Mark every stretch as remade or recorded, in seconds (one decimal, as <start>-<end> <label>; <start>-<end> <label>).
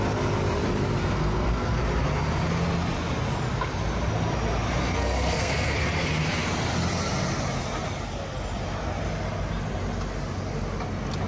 0.0-1.0 recorded; 1.0-1.8 remade; 1.8-4.8 recorded; 4.8-5.7 remade; 5.7-11.3 recorded